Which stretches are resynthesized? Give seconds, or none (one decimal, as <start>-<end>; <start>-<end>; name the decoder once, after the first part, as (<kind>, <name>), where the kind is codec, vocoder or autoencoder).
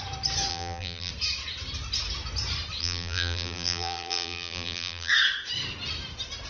0.5-1.1 (vocoder, BigVGAN v2); 2.8-5.1